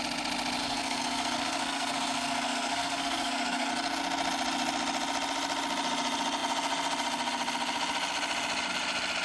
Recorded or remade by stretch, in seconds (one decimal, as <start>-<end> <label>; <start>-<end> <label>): 0.0-0.6 recorded; 0.6-3.7 remade; 3.7-9.2 recorded